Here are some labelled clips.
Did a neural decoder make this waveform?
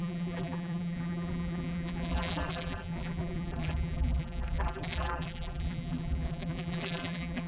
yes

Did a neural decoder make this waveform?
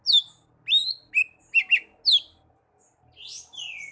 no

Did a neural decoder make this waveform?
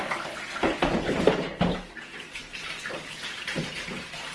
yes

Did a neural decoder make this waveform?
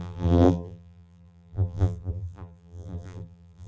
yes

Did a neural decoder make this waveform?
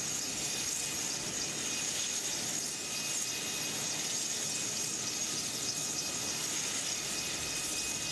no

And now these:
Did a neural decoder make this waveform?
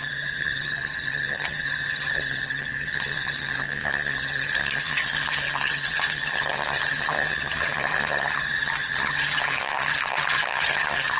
yes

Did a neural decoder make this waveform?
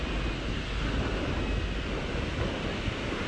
no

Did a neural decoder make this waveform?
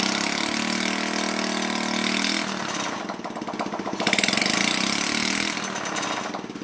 no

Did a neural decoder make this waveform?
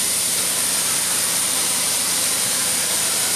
yes